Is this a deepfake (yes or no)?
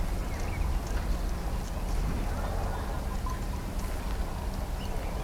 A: no